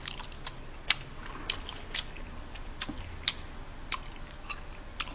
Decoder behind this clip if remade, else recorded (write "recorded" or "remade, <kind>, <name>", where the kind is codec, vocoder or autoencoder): recorded